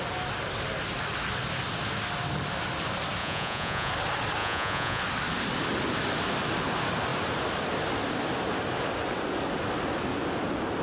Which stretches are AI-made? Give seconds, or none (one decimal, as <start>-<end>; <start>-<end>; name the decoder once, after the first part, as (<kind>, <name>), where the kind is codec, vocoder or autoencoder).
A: 3.2-3.9 (vocoder, Vocos); 4.4-5.0